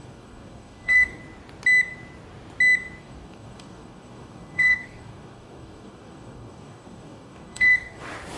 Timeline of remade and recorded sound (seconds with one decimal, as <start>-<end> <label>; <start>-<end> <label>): 0.0-1.2 remade; 1.2-3.0 recorded; 3.0-8.0 remade; 8.0-8.4 recorded